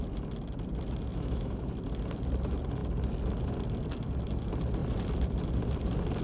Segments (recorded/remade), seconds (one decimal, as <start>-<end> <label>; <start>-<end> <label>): 0.0-1.1 recorded; 1.1-1.7 remade; 1.7-6.2 recorded